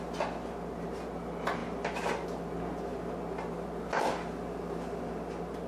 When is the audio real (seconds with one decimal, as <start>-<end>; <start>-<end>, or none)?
0.0-5.7